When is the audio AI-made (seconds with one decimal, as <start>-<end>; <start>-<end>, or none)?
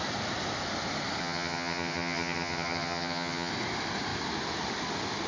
1.2-3.5